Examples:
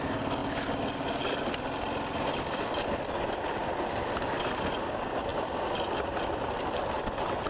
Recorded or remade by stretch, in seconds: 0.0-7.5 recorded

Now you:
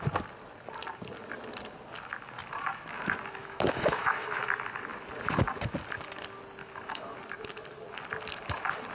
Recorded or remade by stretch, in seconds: 0.0-3.4 recorded; 3.4-4.4 remade; 4.4-6.6 recorded; 6.6-7.2 remade; 7.2-8.9 recorded

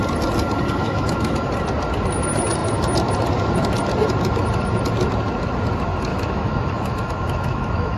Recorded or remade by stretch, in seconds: 0.0-0.8 recorded; 0.8-1.5 remade; 1.5-6.1 recorded; 6.1-8.0 remade

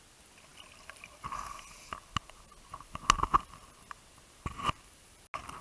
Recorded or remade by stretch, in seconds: 0.0-5.6 recorded